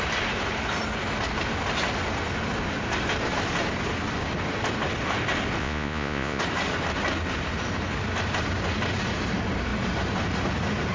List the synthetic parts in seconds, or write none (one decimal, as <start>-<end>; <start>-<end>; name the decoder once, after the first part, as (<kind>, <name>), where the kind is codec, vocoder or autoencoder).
5.6-6.4 (vocoder, Vocos)